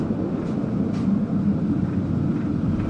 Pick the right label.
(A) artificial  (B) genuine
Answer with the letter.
A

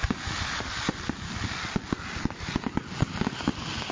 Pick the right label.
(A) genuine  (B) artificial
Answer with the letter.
A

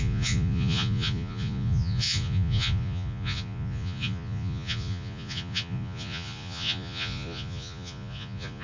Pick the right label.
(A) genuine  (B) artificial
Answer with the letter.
B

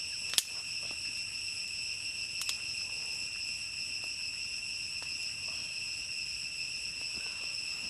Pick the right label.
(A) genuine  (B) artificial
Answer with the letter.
A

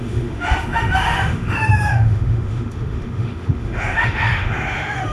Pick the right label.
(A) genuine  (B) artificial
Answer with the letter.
B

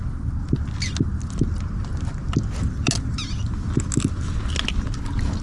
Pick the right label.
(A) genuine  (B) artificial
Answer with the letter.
A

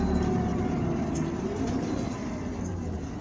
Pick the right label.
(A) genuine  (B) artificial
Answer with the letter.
A